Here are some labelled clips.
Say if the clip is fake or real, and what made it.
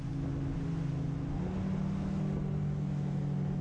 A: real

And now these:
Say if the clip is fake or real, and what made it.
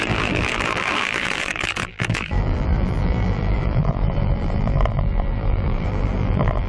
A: fake, vocoder, BigVGAN v2